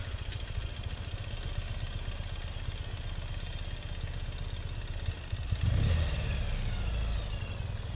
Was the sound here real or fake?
real